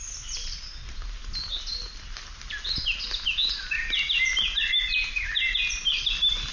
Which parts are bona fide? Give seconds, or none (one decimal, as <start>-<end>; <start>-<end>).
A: 0.0-6.5